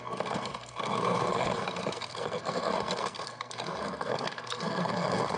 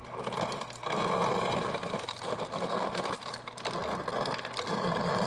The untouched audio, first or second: second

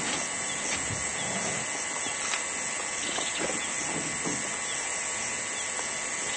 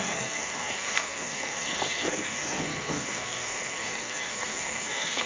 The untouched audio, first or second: first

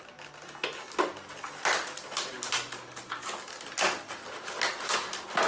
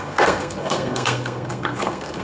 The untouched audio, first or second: first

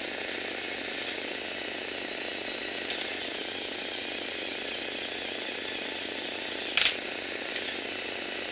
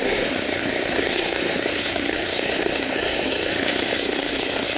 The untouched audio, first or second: first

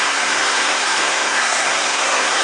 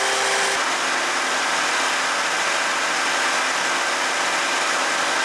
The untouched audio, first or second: second